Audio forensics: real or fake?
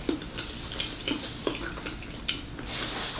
real